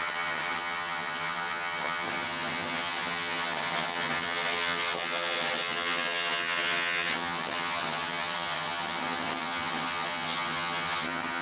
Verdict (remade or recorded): remade